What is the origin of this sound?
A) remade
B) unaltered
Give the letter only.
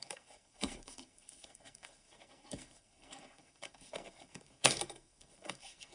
A